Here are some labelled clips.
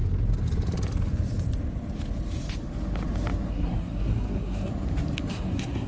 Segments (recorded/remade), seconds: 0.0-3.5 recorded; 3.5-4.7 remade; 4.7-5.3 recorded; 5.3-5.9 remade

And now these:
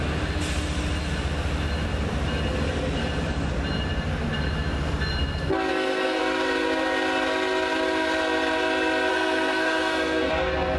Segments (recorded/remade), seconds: 0.0-5.7 recorded; 5.7-6.2 remade; 6.2-9.1 recorded; 9.1-10.3 remade; 10.3-10.8 recorded

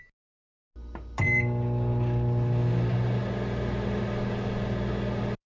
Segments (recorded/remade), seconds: 0.0-5.5 recorded

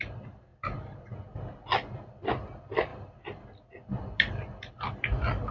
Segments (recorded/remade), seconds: 0.0-5.5 recorded